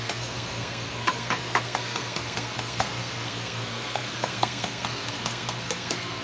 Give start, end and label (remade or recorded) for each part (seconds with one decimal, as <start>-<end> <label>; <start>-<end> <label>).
0.0-6.2 remade

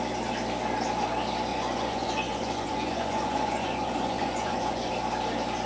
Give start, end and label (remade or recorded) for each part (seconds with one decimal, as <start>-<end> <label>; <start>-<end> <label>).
0.0-1.5 recorded; 1.5-4.9 remade; 4.9-5.7 recorded

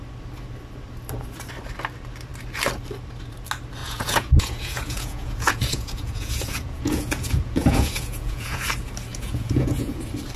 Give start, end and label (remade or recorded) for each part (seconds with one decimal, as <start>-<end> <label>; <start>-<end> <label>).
0.0-3.8 recorded; 3.8-8.6 remade; 8.6-9.1 recorded; 9.1-10.0 remade; 10.0-10.4 recorded

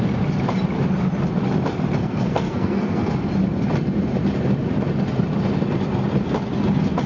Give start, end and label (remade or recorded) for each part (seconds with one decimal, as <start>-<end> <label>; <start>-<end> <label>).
0.0-2.0 recorded; 2.0-3.1 remade; 3.1-7.1 recorded

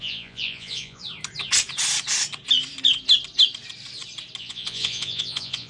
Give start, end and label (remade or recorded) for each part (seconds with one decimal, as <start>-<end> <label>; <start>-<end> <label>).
0.0-1.0 remade; 1.0-4.4 recorded; 4.4-5.7 remade

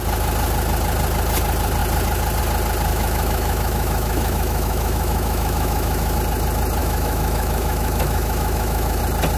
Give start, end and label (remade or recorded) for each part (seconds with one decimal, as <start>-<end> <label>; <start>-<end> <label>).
0.0-2.9 recorded; 2.9-6.2 remade; 6.2-6.8 recorded; 6.8-9.0 remade; 9.0-9.4 recorded